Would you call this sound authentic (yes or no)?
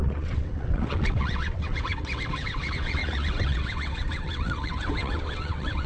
no